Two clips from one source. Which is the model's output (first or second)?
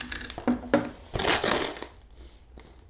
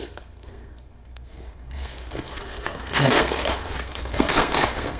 second